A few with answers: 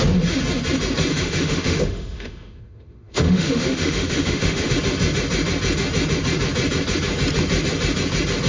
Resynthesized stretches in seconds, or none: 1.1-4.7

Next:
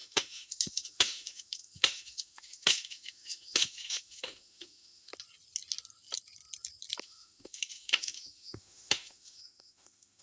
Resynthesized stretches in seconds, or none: 0.0-5.1; 7.0-10.2

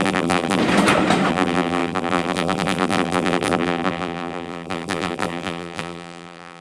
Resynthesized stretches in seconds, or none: 0.0-0.6; 1.3-6.6

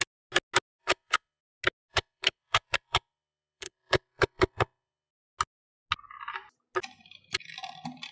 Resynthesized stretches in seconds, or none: 0.8-1.4; 1.9-5.1

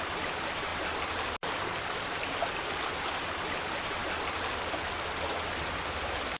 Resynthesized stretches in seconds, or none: none

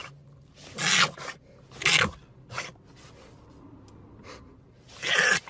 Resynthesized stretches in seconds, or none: none

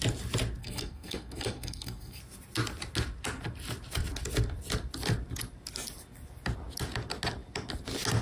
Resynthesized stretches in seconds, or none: 0.6-2.2

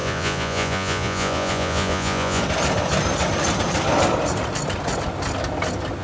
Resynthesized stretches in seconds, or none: 0.0-2.4